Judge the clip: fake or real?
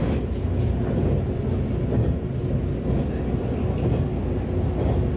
real